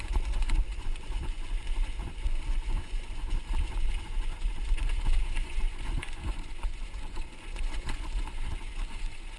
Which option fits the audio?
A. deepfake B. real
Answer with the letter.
A